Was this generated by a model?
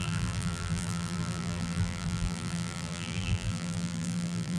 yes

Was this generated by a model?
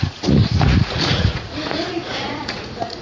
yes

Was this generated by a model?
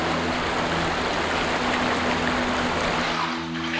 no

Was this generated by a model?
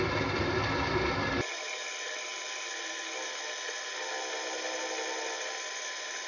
no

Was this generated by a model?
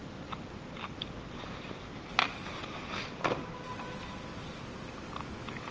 no